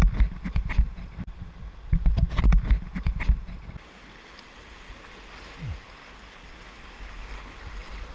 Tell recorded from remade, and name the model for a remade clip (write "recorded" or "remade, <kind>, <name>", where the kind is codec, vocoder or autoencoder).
recorded